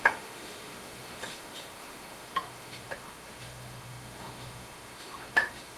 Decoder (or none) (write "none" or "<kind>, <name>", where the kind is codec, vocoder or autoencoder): autoencoder, DAC-VAE